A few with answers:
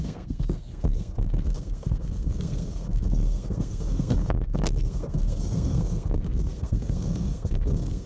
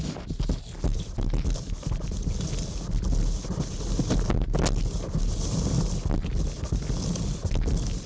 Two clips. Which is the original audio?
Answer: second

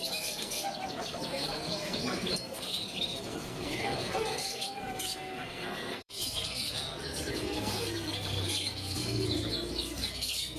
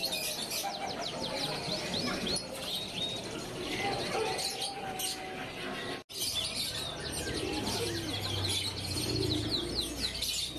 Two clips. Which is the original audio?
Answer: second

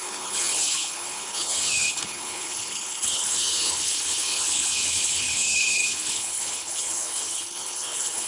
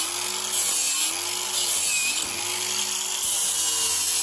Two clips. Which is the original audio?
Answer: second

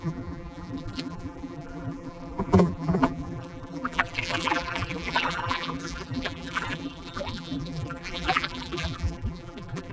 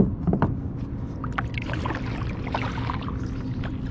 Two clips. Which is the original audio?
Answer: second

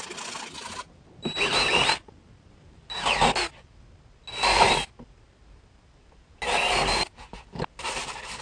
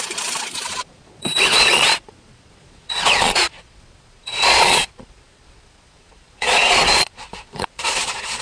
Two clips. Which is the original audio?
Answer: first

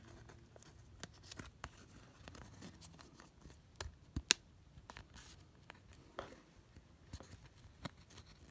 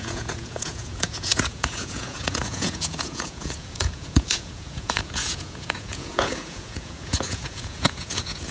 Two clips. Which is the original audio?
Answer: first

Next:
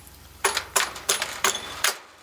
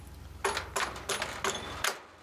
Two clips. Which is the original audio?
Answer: second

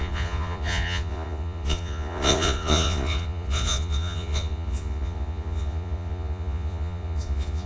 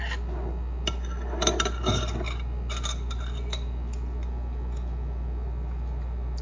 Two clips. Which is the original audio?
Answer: second